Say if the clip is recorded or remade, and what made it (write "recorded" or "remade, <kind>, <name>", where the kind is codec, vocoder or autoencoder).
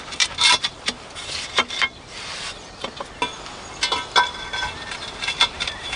recorded